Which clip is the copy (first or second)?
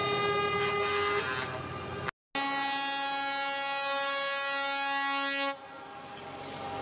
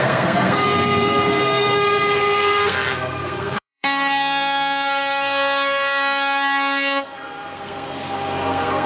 second